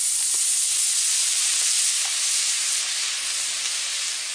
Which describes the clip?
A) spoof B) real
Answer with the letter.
B